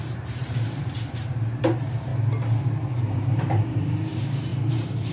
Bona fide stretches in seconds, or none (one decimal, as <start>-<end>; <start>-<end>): 2.1-2.7